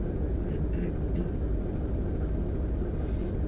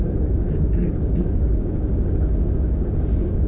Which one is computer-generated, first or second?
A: second